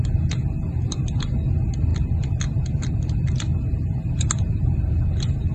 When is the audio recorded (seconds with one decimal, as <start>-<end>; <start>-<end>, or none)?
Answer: 0.0-5.5